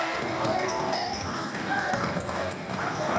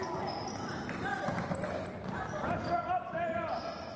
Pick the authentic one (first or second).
second